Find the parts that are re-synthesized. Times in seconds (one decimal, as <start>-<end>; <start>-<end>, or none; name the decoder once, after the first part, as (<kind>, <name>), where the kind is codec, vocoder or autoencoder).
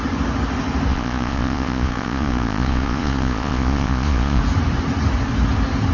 0.9-4.4 (vocoder, Vocos)